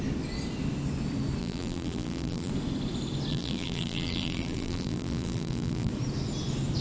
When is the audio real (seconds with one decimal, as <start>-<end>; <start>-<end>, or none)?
0.0-1.4; 2.5-3.3; 5.9-6.8

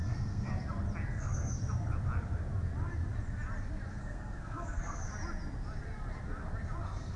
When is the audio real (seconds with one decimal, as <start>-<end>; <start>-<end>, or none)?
0.5-1.1; 1.6-3.9; 5.1-7.2